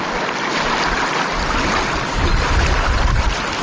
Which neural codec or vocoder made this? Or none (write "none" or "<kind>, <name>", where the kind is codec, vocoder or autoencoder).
none